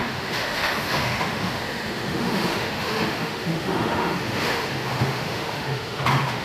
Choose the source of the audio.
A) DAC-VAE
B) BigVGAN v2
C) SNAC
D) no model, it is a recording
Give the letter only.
A